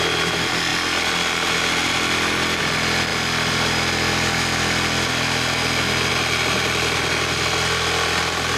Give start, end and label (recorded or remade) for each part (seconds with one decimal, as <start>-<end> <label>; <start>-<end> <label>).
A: 0.0-8.6 recorded